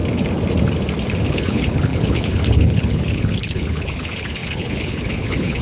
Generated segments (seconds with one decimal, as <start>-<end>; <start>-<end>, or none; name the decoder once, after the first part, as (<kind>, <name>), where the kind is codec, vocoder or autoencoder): 1.3-5.6 (codec, HILCodec)